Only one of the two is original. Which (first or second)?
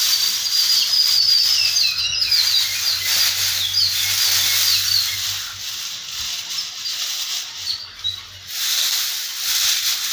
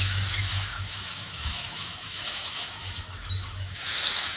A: first